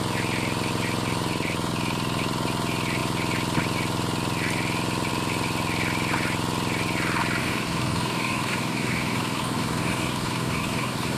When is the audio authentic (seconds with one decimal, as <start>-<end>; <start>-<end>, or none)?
0.0-7.4